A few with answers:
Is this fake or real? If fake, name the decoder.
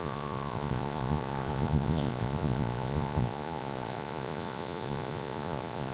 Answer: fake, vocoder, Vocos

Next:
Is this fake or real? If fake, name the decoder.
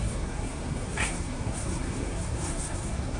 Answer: fake, codec, SNAC